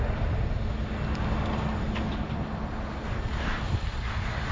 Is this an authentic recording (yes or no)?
yes